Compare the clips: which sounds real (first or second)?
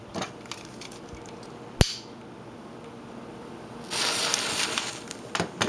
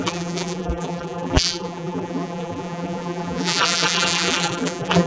first